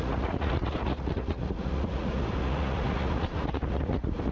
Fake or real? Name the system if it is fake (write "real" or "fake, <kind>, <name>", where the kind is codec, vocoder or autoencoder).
fake, vocoder, Vocos